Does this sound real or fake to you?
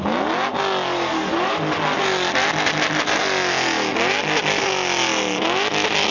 real